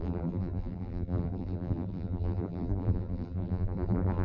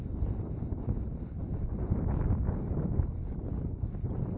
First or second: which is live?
second